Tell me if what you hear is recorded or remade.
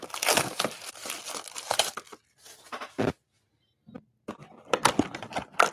recorded